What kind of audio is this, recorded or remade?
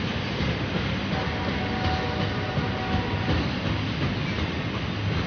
recorded